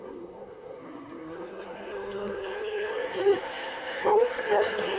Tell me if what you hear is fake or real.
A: fake